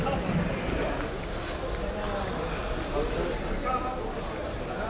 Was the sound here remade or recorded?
recorded